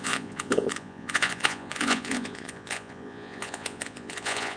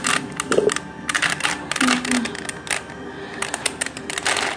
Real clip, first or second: second